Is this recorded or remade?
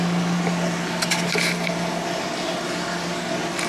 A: recorded